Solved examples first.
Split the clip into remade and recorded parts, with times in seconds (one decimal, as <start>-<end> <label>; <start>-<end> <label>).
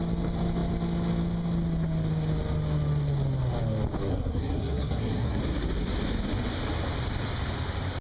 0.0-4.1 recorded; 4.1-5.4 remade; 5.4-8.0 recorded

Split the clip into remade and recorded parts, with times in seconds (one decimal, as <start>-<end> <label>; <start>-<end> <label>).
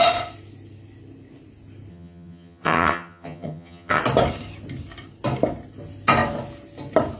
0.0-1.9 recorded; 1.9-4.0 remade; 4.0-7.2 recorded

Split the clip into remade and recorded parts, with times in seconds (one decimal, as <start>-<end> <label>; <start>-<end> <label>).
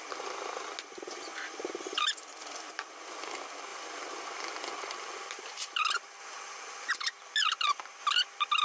0.0-1.3 recorded; 1.3-2.9 remade; 2.9-3.7 recorded; 3.7-6.9 remade; 6.9-8.6 recorded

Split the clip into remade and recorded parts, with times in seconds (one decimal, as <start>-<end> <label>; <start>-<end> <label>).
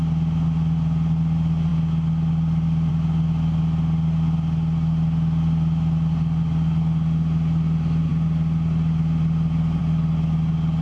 0.0-10.8 recorded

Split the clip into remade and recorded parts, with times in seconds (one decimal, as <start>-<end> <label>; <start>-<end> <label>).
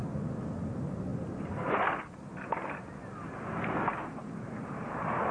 0.0-5.3 recorded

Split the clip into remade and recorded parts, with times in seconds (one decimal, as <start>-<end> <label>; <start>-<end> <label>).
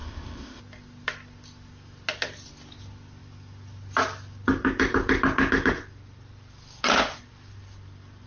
0.0-0.6 remade; 0.6-8.3 recorded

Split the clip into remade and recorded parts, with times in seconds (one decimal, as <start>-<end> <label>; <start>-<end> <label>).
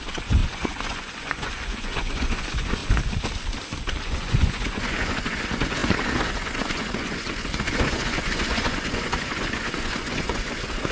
0.0-2.8 remade; 2.8-4.0 recorded; 4.0-10.9 remade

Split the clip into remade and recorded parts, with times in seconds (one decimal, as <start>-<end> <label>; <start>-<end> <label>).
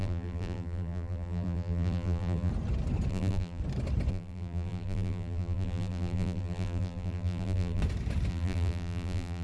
0.0-2.5 remade; 2.5-3.1 recorded; 3.1-3.6 remade; 3.6-4.1 recorded; 4.1-7.8 remade; 7.8-8.3 recorded; 8.3-9.4 remade